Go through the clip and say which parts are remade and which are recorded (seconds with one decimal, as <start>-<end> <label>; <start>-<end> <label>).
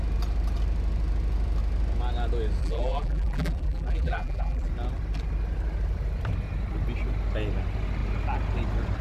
0.0-2.6 recorded; 2.6-4.7 remade; 4.7-9.0 recorded